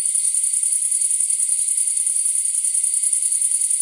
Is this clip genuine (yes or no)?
yes